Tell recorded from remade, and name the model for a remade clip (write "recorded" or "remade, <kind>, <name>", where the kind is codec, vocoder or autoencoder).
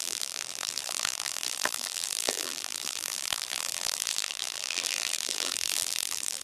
remade, vocoder, BigVGAN v2